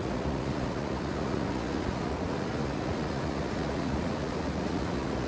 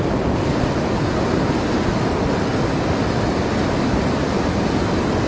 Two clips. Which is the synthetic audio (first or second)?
first